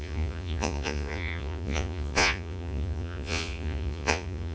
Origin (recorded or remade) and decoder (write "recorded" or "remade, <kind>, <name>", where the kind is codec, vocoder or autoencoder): remade, vocoder, Vocos